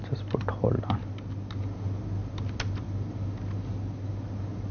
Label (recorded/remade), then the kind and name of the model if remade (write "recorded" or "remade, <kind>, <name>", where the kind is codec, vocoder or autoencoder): recorded